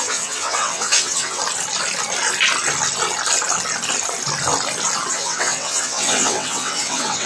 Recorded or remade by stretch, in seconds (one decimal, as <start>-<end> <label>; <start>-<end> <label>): 0.0-1.4 remade; 1.4-5.1 recorded; 5.1-7.3 remade